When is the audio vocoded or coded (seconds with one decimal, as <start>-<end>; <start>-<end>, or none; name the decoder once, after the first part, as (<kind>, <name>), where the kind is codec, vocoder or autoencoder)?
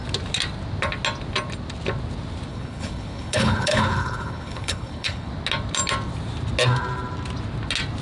2.5-5.3 (codec, HILCodec)